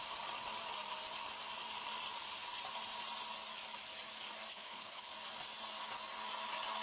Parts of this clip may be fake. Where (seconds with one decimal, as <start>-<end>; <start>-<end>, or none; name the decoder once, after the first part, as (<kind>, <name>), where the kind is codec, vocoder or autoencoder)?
4.5-5.1 (codec, HILCodec)